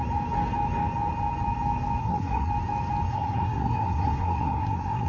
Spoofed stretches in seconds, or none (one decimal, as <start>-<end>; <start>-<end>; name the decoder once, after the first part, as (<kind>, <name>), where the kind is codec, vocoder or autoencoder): 2.0-2.5 (codec, SNAC); 3.1-5.1

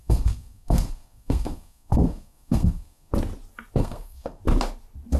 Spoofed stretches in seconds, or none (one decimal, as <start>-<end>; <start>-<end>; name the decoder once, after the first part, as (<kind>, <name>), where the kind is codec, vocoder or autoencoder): 0.0-3.1 (codec, SNAC); 3.8-4.4

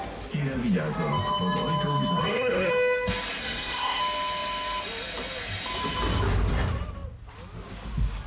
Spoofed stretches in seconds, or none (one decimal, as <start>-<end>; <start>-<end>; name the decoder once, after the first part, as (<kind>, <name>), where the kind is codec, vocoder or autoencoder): 2.2-2.7 (codec, SNAC); 3.4-4.0

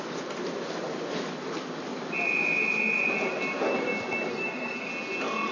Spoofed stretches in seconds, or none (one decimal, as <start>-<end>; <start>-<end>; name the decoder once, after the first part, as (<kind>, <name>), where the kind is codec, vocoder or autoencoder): 4.3-4.9 (codec, SNAC)